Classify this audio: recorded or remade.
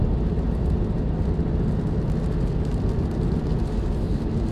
recorded